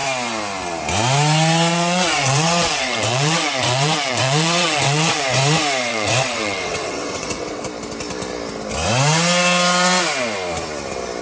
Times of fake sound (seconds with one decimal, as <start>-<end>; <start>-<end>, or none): 1.7-5.2; 5.9-7.6